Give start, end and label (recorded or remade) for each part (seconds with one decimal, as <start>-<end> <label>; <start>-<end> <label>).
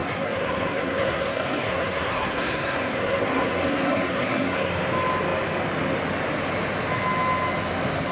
0.0-4.7 remade; 4.7-8.1 recorded